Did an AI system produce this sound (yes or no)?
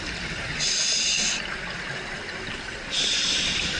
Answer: no